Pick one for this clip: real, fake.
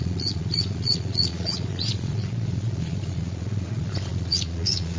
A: fake